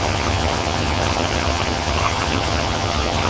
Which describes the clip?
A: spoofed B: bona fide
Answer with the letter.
A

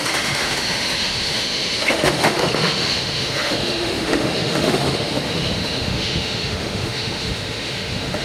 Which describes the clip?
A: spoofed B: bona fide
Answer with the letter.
A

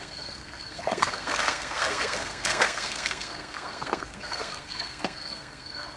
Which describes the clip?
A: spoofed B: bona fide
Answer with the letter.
A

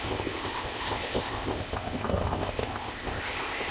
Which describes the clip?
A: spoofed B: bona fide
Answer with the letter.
A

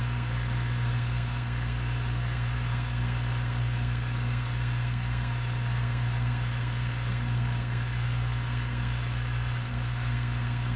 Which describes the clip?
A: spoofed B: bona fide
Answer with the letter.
A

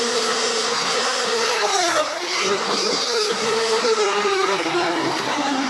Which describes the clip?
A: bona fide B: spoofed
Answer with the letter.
B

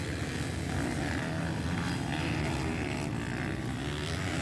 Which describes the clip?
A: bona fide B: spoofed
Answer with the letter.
A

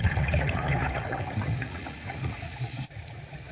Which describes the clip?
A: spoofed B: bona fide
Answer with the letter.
A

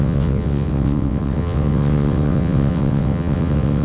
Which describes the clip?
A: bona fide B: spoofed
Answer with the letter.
B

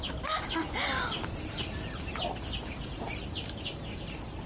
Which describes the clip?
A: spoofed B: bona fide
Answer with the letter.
B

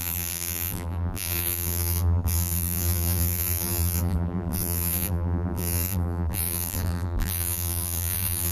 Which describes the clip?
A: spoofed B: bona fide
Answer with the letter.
A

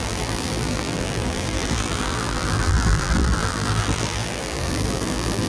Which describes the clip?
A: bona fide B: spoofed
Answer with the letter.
B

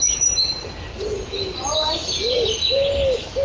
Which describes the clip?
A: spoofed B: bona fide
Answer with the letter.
B